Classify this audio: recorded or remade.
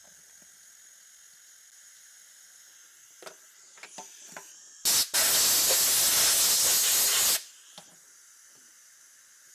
recorded